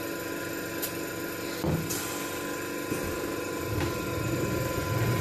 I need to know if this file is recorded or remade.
recorded